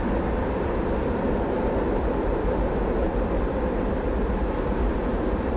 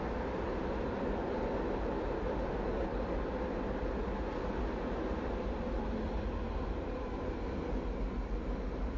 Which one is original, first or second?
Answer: second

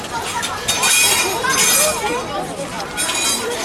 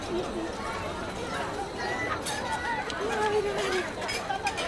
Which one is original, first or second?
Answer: second